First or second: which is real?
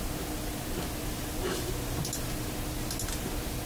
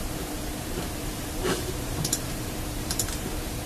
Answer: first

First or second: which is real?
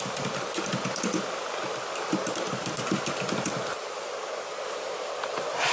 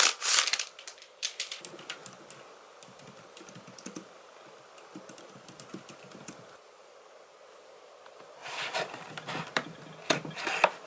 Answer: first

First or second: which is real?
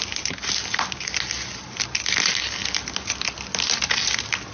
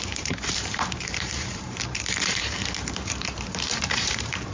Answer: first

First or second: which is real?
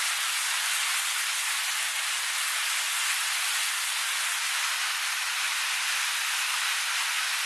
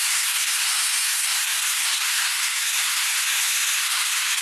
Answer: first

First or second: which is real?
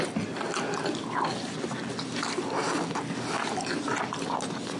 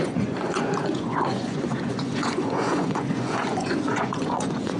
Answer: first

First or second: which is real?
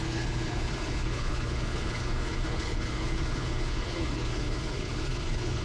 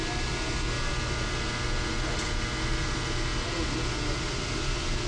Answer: second